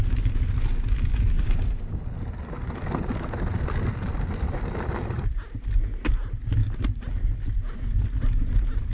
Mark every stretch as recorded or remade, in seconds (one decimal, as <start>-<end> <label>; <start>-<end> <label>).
0.0-8.9 recorded

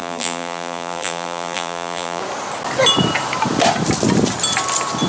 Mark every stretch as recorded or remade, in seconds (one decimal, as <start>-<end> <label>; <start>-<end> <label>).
0.0-2.2 remade; 2.2-5.1 recorded

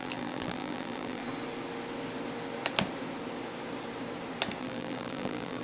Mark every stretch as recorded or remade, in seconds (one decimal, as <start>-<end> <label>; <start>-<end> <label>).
0.0-1.2 remade; 1.2-4.6 recorded; 4.6-5.6 remade

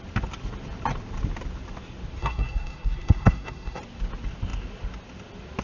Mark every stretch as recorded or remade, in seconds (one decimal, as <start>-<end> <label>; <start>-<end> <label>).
0.0-2.2 recorded; 2.2-3.8 remade; 3.8-5.6 recorded

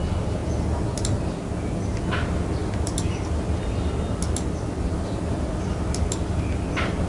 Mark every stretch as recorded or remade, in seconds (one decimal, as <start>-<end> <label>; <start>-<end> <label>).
0.0-7.1 recorded

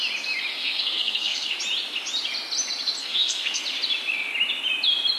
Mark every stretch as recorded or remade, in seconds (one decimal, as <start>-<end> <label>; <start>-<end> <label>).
0.0-0.5 recorded; 0.5-1.5 remade; 1.5-3.0 recorded; 3.0-3.6 remade; 3.6-5.2 recorded

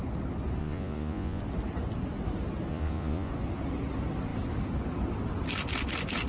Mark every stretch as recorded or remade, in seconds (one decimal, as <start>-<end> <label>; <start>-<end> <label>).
0.0-0.6 recorded; 0.6-1.4 remade; 1.4-2.7 recorded; 2.7-3.3 remade; 3.3-6.3 recorded

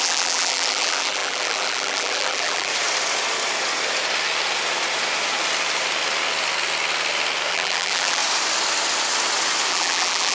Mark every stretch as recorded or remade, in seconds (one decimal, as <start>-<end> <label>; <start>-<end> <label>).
0.0-2.7 remade; 2.7-7.5 recorded; 7.5-8.2 remade; 8.2-9.7 recorded; 9.7-10.3 remade